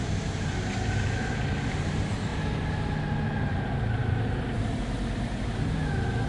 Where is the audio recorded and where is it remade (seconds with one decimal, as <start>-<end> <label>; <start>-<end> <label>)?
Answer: 0.0-6.3 recorded